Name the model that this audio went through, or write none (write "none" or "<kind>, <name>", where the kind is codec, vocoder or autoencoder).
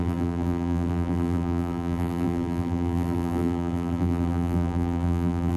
vocoder, BigVGAN v2